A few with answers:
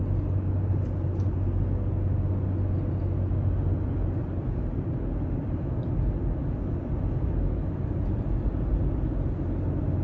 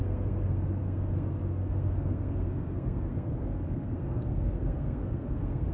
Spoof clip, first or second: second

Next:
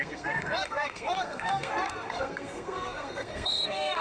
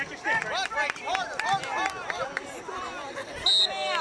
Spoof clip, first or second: first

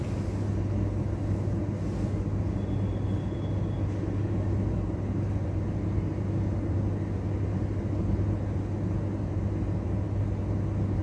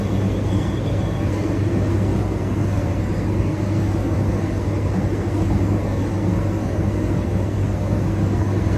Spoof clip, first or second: second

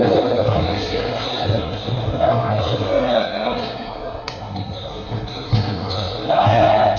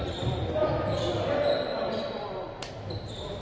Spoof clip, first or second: first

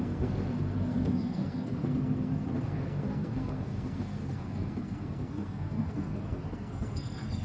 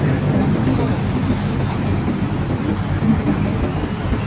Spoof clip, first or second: first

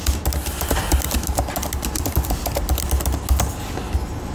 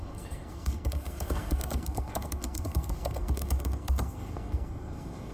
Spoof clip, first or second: second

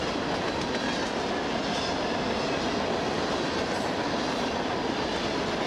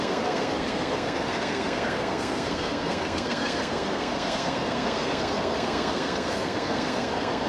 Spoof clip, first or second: second